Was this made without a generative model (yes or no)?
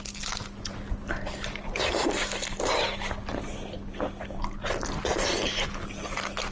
yes